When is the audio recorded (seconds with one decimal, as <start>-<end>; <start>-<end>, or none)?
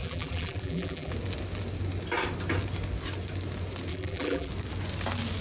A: 1.1-3.9; 4.5-5.4